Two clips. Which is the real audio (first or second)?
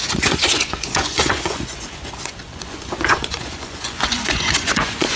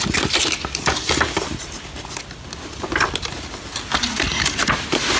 second